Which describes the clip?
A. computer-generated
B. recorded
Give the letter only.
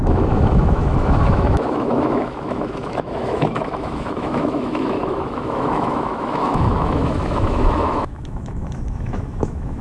A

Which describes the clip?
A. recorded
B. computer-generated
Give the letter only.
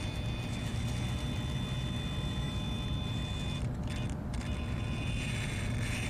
A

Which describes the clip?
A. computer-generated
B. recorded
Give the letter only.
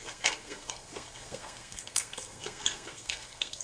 A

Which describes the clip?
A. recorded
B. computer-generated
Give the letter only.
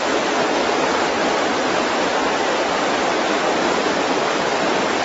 A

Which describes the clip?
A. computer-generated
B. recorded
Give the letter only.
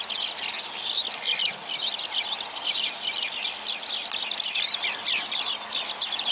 B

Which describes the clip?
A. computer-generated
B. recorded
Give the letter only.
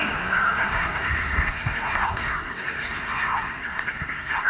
A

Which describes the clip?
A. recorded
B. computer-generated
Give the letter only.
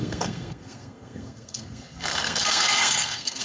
B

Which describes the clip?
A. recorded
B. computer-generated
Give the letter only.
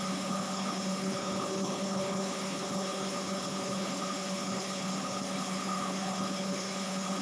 B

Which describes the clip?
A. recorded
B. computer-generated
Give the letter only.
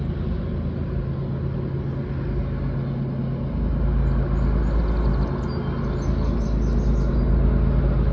A